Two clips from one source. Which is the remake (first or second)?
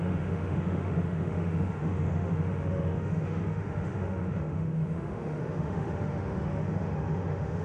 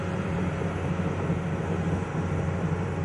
first